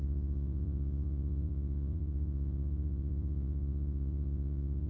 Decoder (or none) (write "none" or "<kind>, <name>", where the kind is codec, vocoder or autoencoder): vocoder, Vocos